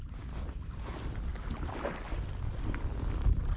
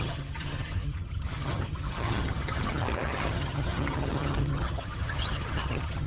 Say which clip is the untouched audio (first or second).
first